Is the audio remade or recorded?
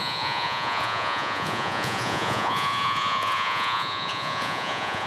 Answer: remade